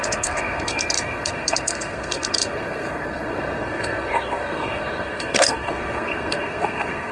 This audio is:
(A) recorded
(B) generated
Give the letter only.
B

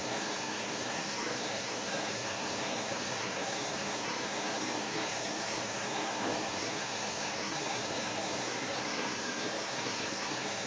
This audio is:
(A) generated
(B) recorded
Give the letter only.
A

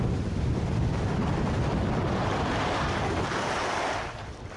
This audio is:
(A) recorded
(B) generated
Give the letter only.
A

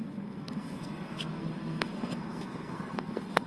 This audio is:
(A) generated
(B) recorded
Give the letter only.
A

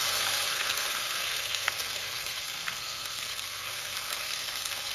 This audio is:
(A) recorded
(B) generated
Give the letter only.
B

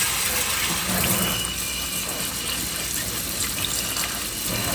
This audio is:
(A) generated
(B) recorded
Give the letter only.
B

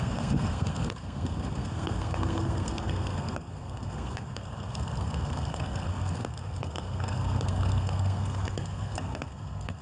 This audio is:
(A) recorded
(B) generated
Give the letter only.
B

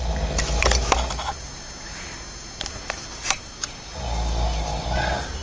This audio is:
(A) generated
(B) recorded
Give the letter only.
B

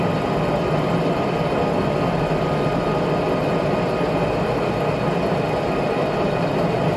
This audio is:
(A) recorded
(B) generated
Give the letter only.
A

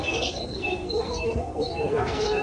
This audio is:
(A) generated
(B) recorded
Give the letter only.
A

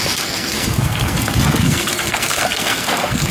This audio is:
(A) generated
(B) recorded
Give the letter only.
A